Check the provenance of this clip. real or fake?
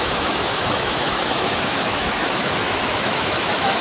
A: fake